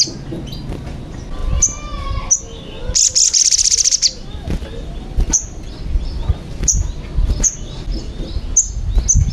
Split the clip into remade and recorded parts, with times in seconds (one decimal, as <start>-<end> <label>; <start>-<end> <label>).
0.0-9.3 recorded